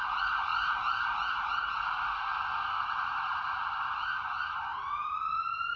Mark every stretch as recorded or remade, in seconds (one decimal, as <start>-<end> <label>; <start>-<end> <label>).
0.0-2.1 recorded; 2.1-2.8 remade; 2.8-5.8 recorded